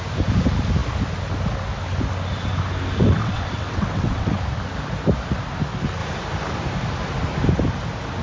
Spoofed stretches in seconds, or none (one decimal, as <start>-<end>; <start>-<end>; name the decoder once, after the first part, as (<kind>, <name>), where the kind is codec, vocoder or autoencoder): 3.2-4.3 (vocoder, WaveNeXt)